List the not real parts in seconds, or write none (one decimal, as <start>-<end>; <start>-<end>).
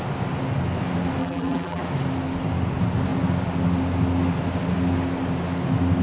1.2-1.8